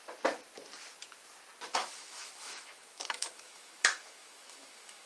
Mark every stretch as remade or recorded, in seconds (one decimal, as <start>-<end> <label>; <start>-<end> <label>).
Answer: 0.0-1.8 recorded; 1.8-5.1 remade

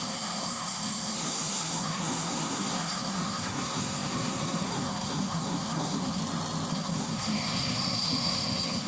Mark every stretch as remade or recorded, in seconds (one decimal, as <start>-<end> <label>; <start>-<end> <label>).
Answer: 0.0-6.2 remade; 6.2-6.7 recorded; 6.7-8.9 remade

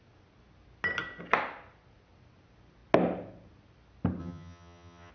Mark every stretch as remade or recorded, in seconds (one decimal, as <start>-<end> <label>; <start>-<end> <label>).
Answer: 0.0-4.2 recorded; 4.2-5.1 remade

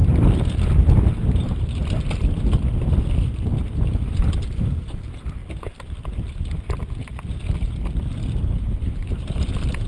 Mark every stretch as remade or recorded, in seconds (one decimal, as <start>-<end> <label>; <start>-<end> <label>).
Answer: 0.0-4.8 remade; 4.8-9.9 recorded